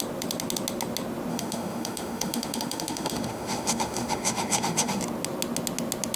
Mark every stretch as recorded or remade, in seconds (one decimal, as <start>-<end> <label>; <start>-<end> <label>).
0.0-1.3 recorded; 1.3-5.0 remade; 5.0-6.2 recorded